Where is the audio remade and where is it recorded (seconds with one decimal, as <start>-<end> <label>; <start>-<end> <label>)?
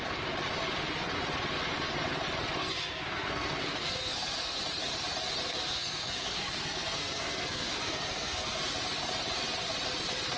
0.0-2.6 recorded; 2.6-4.6 remade; 4.6-5.5 recorded; 5.5-8.6 remade; 8.6-10.4 recorded